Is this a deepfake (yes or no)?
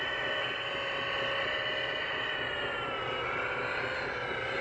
no